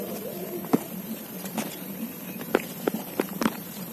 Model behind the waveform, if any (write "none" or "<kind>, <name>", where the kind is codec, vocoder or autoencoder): vocoder, BigVGAN v2